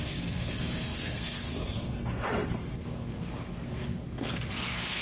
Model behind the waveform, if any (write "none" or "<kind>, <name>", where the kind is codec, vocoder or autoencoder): codec, SNAC